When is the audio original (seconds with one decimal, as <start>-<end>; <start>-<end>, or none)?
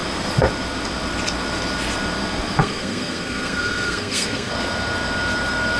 0.0-2.6; 4.5-5.8